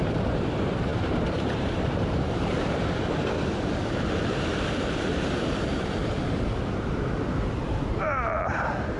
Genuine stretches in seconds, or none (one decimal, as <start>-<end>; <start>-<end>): 6.0-7.6